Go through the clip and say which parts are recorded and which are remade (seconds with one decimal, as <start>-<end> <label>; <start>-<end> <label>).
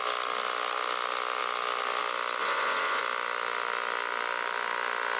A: 0.0-2.4 recorded; 2.4-3.0 remade; 3.0-5.2 recorded